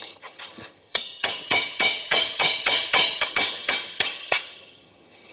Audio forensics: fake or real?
fake